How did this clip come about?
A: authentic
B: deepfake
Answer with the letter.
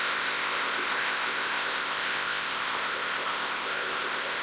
B